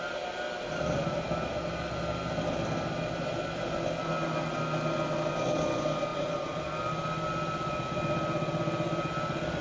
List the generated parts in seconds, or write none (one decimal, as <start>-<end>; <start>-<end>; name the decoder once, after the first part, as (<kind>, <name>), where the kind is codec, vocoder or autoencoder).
6.1-6.6 (vocoder, BigVGAN v2)